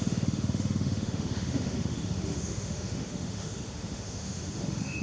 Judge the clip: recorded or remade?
remade